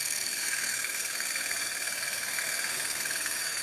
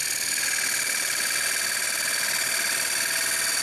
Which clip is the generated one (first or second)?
first